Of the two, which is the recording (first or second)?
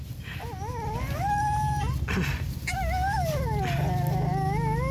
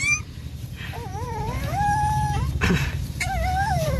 first